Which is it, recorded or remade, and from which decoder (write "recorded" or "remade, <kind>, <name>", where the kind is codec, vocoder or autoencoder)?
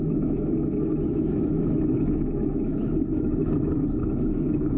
remade, autoencoder, DAC-VAE